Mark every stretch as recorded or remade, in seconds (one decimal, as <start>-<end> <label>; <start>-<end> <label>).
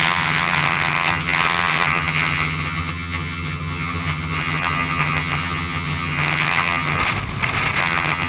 0.0-7.0 remade; 7.0-7.8 recorded; 7.8-8.3 remade